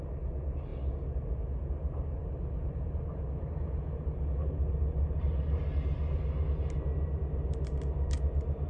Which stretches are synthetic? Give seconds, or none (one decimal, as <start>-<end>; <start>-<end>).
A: none